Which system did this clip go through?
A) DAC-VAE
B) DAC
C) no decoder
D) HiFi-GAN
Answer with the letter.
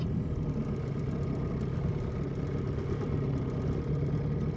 C